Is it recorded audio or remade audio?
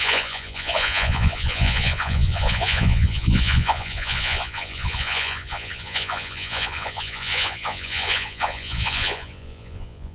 remade